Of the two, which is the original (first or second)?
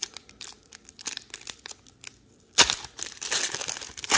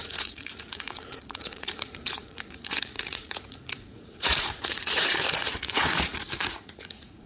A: first